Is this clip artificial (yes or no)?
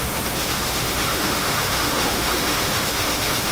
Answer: yes